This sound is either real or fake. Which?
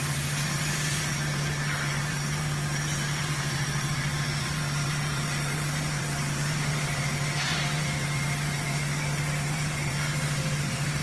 fake